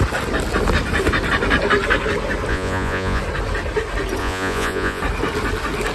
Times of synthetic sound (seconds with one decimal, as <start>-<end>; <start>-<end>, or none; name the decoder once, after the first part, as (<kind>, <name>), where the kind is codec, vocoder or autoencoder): 2.5-3.2 (vocoder, Vocos); 4.2-5.0